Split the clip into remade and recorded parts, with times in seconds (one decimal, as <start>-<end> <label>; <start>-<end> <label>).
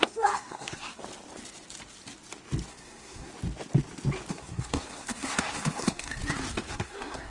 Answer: 0.0-1.0 remade; 1.0-2.7 recorded; 2.7-3.3 remade; 3.3-4.3 recorded; 4.3-6.2 remade; 6.2-6.7 recorded; 6.7-7.3 remade